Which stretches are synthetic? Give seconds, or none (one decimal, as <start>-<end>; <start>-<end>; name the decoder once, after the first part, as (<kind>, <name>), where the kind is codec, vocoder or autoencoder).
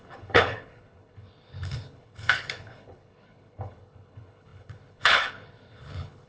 0.0-6.3 (codec, HILCodec)